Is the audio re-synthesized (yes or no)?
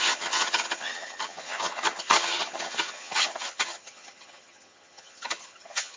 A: yes